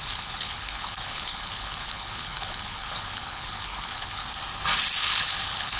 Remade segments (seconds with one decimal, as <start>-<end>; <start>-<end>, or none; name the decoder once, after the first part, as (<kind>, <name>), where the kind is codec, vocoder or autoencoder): 0.0-4.2 (codec, HILCodec); 5.0-5.8